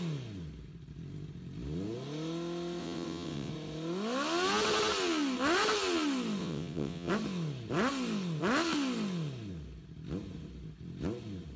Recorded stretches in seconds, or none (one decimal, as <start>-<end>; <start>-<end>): 0.0-2.8; 3.5-6.4; 7.1-11.6